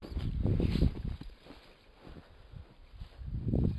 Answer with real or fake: real